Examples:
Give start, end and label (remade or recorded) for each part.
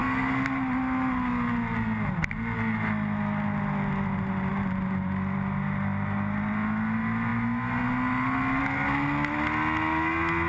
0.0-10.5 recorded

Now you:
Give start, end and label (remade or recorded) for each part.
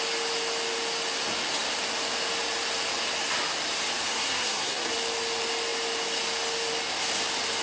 0.0-4.1 recorded; 4.1-4.9 remade; 4.9-7.6 recorded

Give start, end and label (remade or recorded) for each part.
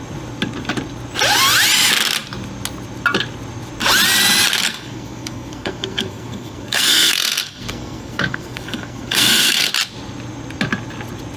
0.0-4.5 recorded; 4.5-9.7 remade; 9.7-11.4 recorded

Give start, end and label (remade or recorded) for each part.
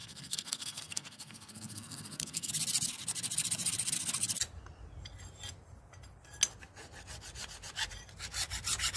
0.0-2.5 remade; 2.5-9.0 recorded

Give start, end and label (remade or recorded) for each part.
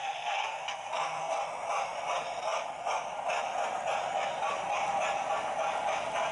0.0-1.4 remade; 1.4-6.3 recorded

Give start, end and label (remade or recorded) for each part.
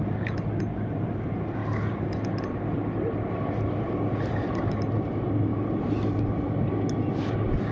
0.0-7.7 recorded